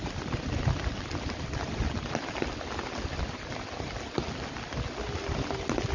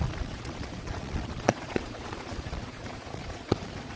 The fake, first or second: second